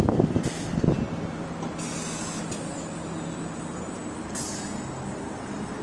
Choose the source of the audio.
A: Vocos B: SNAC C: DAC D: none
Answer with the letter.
D